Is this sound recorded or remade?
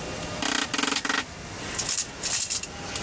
recorded